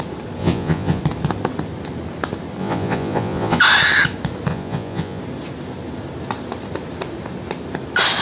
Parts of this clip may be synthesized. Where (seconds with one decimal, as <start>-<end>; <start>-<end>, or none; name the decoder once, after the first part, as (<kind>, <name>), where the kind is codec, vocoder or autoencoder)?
0.4-1.0 (vocoder, Vocos); 2.6-3.6; 4.5-5.2